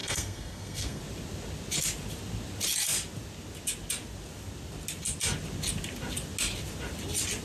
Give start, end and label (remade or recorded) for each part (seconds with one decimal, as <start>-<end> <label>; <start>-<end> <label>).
0.0-1.0 remade; 1.0-7.4 recorded